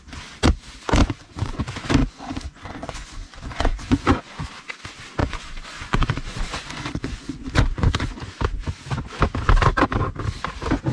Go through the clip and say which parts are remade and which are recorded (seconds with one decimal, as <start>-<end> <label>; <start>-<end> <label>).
0.0-1.0 recorded; 1.0-1.6 remade; 1.6-2.0 recorded; 2.0-4.5 remade; 4.5-5.2 recorded; 5.2-8.2 remade; 8.2-10.9 recorded